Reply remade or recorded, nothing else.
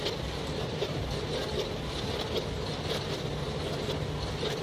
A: recorded